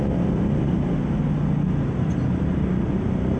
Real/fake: real